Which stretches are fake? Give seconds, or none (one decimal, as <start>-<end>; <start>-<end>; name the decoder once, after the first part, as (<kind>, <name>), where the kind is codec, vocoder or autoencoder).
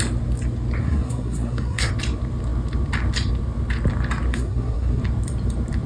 0.8-1.9 (codec, SNAC); 4.3-5.0